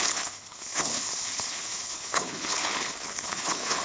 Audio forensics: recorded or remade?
remade